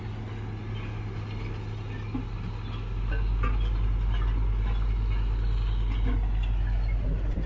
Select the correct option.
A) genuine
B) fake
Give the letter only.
A